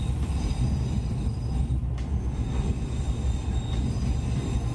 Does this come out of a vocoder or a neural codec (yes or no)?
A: no